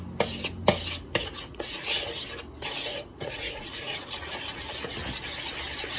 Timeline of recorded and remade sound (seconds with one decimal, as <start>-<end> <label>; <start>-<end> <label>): 0.0-1.5 recorded; 1.5-2.2 remade; 2.2-2.9 recorded; 2.9-4.7 remade; 4.7-6.0 recorded